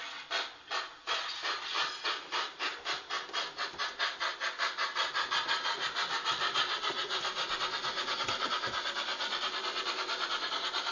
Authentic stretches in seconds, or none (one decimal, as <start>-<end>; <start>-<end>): 0.0-10.9